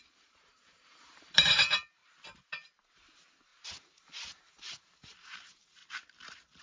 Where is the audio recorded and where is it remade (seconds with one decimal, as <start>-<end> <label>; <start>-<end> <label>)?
0.0-2.0 remade; 2.0-2.7 recorded; 2.7-5.8 remade; 5.8-6.6 recorded